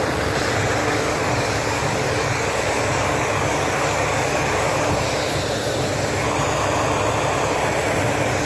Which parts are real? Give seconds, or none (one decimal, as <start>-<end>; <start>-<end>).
0.0-0.8; 4.9-8.5